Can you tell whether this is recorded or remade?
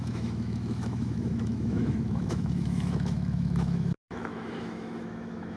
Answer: remade